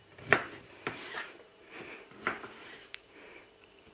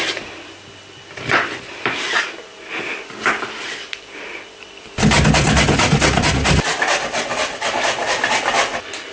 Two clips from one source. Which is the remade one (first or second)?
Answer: first